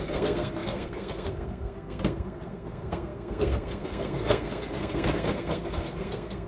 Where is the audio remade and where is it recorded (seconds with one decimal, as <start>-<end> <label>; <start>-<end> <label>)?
0.0-6.5 remade